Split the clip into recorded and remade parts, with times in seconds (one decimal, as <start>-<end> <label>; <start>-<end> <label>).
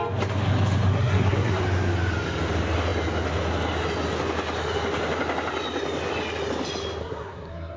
0.0-0.9 recorded; 0.9-1.6 remade; 1.6-7.0 recorded; 7.0-7.8 remade